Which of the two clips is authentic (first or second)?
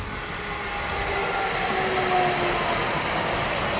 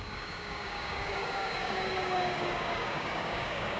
first